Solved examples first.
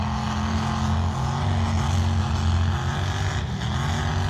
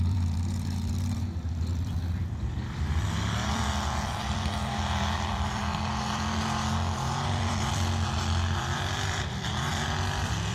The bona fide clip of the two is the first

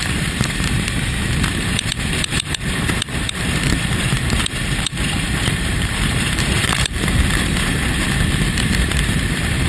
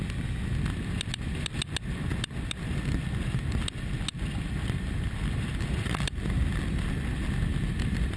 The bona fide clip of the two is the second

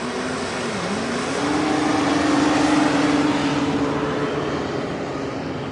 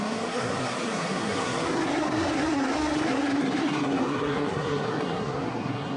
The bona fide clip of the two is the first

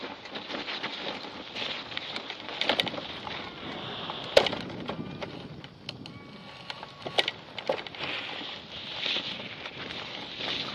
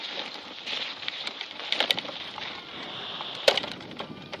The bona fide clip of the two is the first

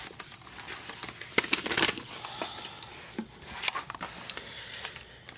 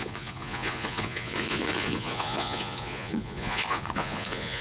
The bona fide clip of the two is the first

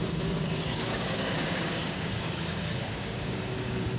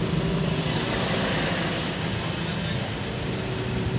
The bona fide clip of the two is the second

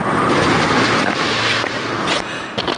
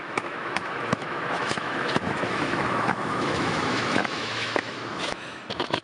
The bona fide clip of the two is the first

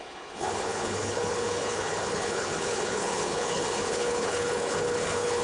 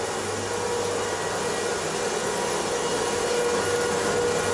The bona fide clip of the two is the second